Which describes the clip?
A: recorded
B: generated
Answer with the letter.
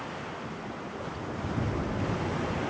A